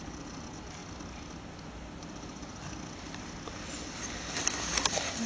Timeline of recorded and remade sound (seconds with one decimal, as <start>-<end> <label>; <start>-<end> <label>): 0.0-5.3 recorded